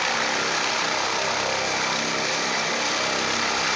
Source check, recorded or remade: recorded